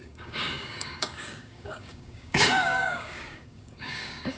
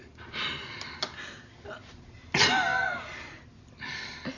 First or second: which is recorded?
second